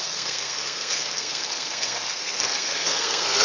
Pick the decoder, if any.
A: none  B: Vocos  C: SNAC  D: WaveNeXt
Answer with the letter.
C